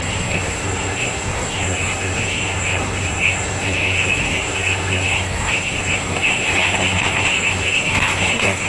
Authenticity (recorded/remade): remade